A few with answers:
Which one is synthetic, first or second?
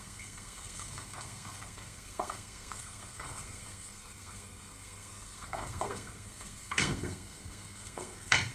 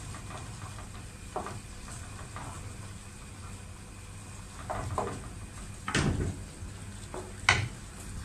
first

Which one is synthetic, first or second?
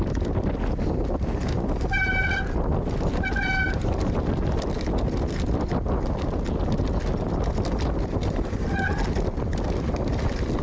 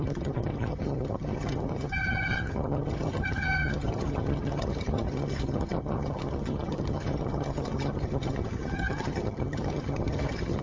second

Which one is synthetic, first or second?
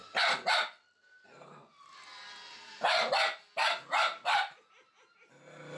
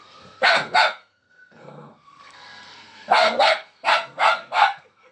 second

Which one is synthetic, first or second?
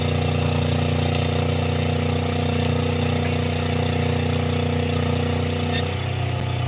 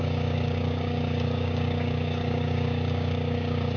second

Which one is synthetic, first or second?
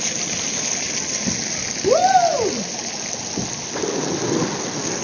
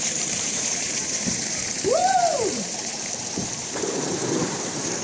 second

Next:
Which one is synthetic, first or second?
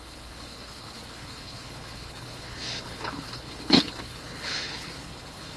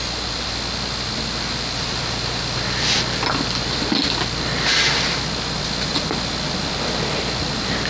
first